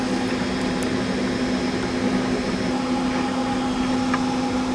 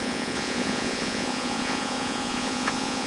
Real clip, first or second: first